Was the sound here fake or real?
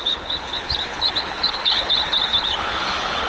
fake